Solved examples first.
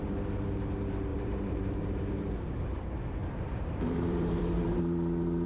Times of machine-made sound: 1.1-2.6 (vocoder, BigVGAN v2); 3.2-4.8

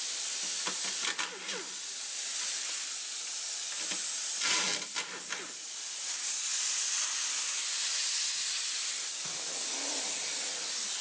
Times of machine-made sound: none

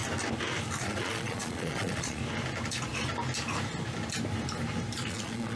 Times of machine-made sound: 0.8-2.2 (vocoder, Vocos); 5.1-5.6

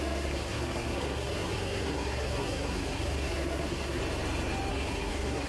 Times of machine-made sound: 0.0-4.0 (codec, SNAC); 4.7-5.5

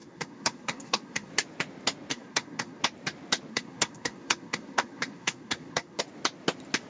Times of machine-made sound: 0.0-1.3 (codec, SNAC); 2.1-2.8; 3.5-6.0

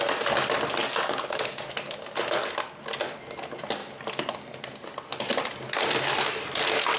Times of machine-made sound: 0.8-1.7 (codec, DAC)

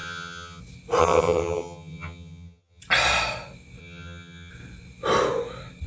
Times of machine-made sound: 0.0-0.6 (vocoder, HiFi-GAN); 1.0-2.8; 3.8-4.5